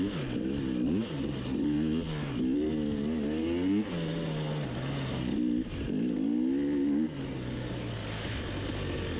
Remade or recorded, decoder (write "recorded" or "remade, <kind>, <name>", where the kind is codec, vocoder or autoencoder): recorded